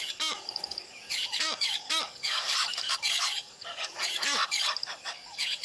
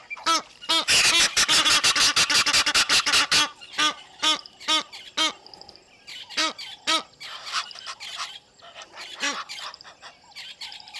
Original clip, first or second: second